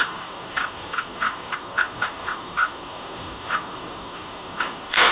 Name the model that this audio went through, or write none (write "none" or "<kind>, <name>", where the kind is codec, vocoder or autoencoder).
codec, DAC